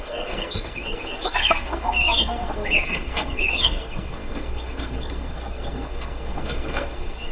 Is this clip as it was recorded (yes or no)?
no